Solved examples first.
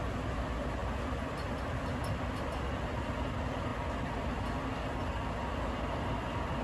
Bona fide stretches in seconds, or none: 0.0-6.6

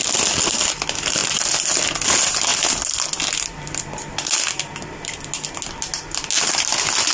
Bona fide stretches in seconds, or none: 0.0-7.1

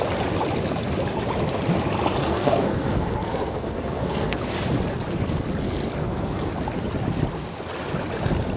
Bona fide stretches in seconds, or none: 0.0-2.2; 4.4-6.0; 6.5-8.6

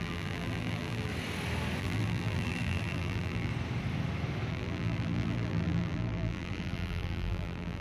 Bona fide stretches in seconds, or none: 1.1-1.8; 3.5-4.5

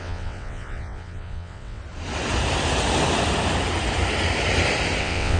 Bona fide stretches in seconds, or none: 1.8-5.0

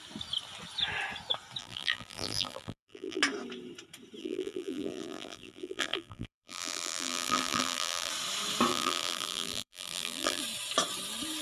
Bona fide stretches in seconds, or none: 0.0-1.6; 3.2-4.2; 8.1-8.7; 10.4-11.4

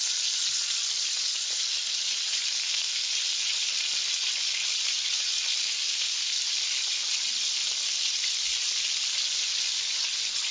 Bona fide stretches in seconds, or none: 0.0-2.6; 3.1-5.8; 6.4-10.5

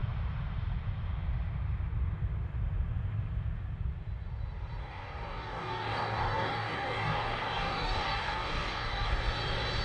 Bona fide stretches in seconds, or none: 0.0-4.8; 9.1-9.8